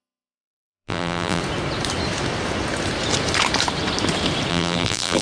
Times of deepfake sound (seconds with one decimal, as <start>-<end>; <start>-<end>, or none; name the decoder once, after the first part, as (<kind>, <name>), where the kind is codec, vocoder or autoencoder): 0.0-1.4 (vocoder, BigVGAN v2); 4.5-5.2